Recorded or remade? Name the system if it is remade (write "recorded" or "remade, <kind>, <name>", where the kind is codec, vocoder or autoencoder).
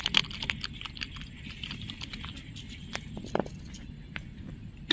recorded